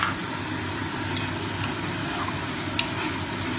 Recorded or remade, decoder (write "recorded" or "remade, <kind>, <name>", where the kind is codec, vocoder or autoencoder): recorded